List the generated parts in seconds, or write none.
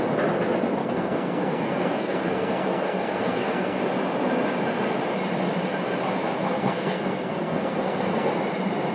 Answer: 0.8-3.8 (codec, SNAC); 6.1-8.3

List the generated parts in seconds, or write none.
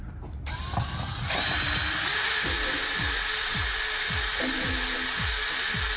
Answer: none